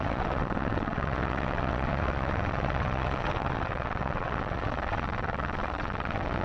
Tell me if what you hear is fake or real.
fake